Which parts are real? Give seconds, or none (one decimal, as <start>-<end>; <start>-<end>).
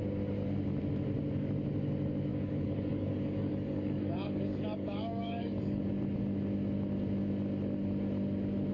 0.0-2.3; 5.8-8.7